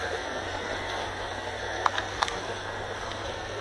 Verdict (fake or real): fake